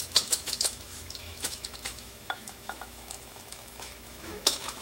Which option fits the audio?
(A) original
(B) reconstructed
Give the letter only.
B